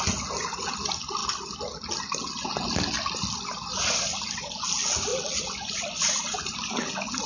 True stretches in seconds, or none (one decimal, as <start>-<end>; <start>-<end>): 0.0-7.3